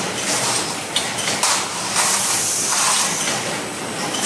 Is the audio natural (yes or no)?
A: yes